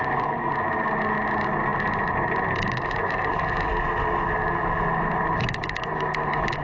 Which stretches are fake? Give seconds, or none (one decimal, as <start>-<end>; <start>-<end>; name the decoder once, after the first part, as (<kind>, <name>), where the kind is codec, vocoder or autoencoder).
none